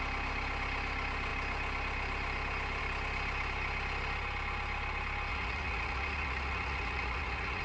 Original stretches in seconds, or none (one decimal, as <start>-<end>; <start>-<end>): 0.0-5.3